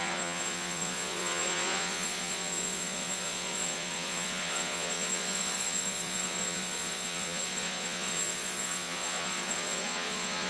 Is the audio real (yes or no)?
no